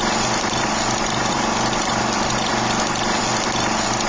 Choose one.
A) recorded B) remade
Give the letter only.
B